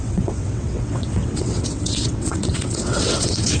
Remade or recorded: remade